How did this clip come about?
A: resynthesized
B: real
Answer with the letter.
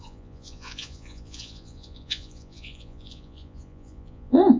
A